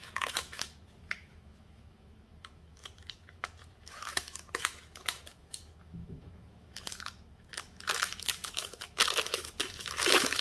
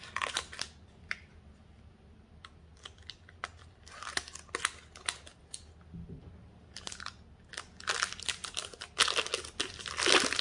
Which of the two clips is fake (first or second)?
first